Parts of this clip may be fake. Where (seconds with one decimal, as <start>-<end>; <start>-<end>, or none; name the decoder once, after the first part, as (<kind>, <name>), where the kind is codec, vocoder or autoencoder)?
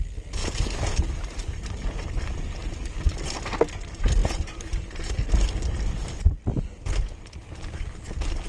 none